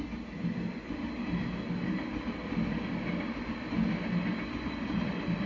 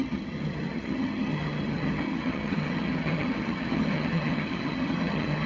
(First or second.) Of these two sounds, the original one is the first